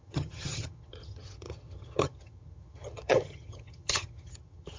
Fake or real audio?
fake